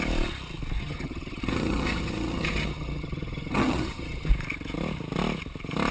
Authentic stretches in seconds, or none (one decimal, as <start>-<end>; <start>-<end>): 0.0-0.8; 4.3-5.9